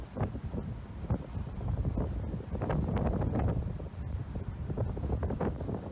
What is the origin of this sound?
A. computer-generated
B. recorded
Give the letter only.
B